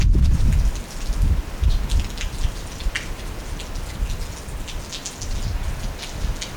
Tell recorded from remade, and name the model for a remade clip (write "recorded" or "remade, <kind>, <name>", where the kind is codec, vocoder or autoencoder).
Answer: recorded